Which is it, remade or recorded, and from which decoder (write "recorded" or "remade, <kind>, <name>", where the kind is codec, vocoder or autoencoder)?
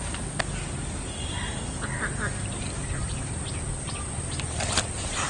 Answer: recorded